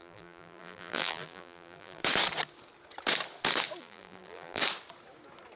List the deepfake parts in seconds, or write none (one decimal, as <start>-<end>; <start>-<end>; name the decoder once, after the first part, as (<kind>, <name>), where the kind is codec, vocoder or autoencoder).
0.0-2.0 (vocoder, BigVGAN v2); 3.8-4.6